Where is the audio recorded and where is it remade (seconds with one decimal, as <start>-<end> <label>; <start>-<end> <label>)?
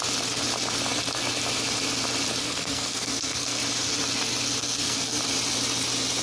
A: 0.0-2.4 recorded; 2.4-3.6 remade; 3.6-4.6 recorded; 4.6-5.2 remade; 5.2-6.2 recorded